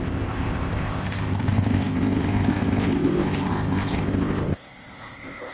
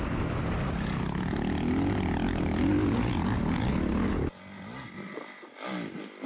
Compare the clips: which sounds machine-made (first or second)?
first